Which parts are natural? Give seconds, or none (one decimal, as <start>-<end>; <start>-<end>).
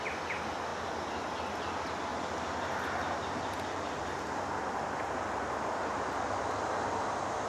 0.0-7.5